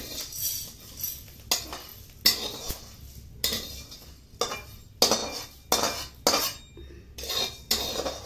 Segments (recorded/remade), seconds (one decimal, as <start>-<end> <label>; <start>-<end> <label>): 0.0-8.3 recorded